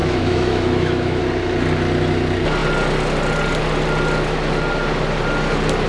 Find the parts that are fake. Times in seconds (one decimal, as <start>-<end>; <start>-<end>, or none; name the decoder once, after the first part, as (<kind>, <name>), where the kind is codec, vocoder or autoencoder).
0.0-1.2 (autoencoder, DAC-VAE)